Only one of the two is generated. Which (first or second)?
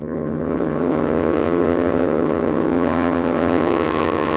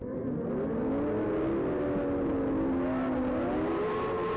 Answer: first